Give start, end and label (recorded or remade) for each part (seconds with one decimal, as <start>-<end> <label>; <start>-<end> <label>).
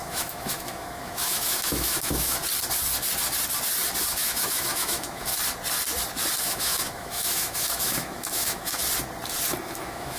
0.0-2.4 remade; 2.4-4.1 recorded; 4.1-5.3 remade; 5.3-6.4 recorded; 6.4-8.8 remade; 8.8-9.7 recorded; 9.7-10.2 remade